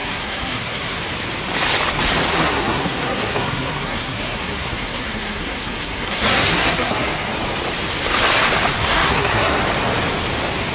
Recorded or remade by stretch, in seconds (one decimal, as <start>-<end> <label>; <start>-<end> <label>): 0.0-1.0 remade; 1.0-2.3 recorded; 2.3-7.3 remade; 7.3-8.8 recorded; 8.8-9.6 remade; 9.6-10.7 recorded